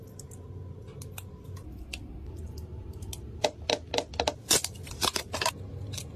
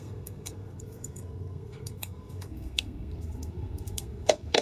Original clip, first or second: first